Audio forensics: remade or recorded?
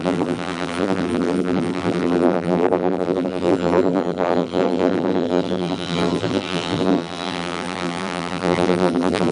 remade